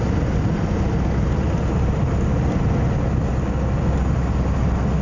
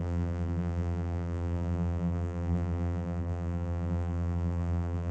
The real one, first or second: first